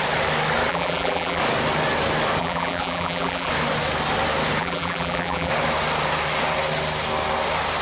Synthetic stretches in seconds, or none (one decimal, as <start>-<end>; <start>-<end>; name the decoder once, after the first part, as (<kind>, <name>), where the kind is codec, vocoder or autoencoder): 0.7-1.4 (vocoder, BigVGAN v2); 2.4-3.5; 4.6-5.5